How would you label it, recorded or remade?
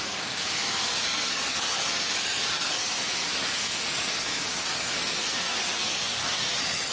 remade